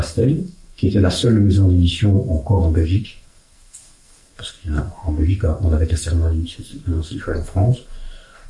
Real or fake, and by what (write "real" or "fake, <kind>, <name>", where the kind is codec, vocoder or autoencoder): fake, codec, SNAC